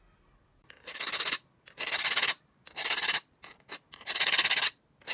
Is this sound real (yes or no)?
yes